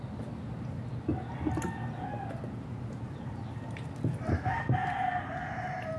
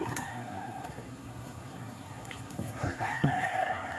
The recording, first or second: first